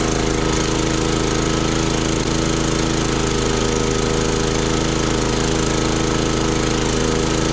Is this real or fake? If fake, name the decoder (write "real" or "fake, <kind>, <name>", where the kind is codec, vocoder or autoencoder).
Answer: real